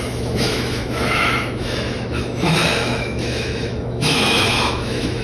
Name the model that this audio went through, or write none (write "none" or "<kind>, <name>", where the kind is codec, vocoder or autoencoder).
autoencoder, DAC-VAE